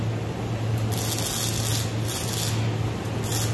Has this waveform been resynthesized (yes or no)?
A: no